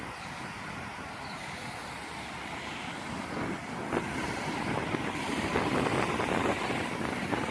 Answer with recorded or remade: recorded